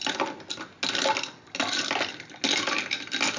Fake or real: real